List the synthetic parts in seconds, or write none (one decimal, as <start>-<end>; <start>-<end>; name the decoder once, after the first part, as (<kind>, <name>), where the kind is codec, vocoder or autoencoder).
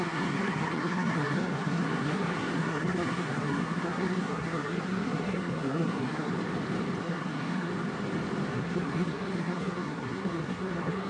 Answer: 0.0-6.3 (codec, SNAC); 7.0-7.7; 8.5-11.1